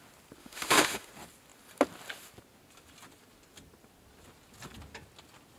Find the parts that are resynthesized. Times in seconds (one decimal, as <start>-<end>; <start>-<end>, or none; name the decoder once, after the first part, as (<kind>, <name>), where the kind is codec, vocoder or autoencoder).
0.4-1.1 (autoencoder, DAC-VAE)